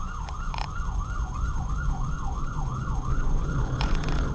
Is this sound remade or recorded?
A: remade